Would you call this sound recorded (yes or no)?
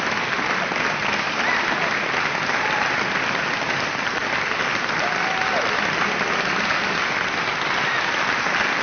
yes